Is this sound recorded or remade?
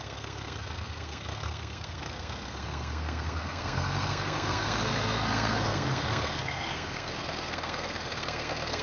remade